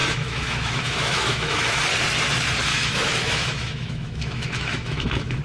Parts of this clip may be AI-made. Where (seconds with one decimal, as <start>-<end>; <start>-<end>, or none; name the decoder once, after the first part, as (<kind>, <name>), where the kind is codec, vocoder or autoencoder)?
0.0-1.8 (autoencoder, DAC-VAE); 2.7-5.4